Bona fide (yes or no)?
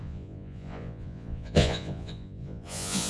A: no